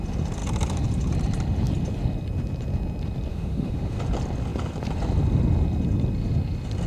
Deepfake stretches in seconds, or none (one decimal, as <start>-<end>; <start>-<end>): 3.3-4.0